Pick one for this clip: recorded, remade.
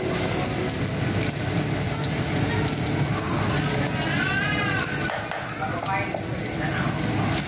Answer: recorded